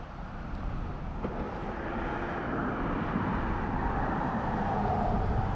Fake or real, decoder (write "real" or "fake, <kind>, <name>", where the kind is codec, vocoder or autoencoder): real